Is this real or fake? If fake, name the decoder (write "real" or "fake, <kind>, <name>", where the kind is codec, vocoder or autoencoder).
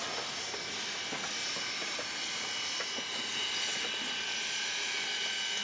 real